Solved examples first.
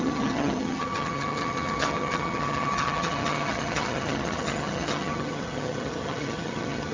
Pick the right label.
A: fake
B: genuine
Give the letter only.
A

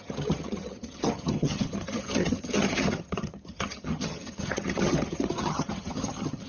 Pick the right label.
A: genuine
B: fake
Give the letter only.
B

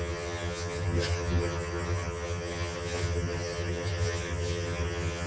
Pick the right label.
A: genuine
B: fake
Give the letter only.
B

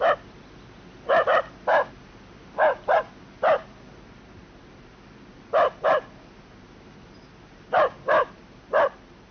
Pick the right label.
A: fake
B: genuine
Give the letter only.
B